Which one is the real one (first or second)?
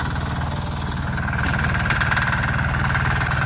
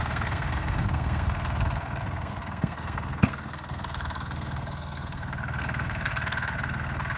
first